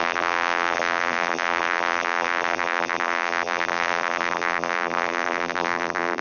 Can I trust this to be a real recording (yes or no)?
no